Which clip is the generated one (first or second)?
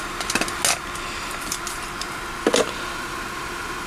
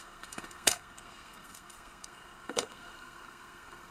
second